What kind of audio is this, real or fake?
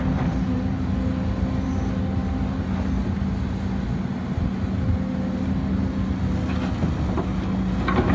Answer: real